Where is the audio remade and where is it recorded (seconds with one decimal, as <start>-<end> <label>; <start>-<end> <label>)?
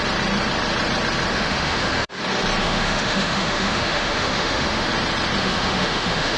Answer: 0.0-1.3 recorded; 1.3-2.2 remade; 2.2-2.6 recorded; 2.6-4.9 remade; 4.9-5.4 recorded; 5.4-6.4 remade